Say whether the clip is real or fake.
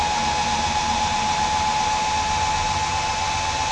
real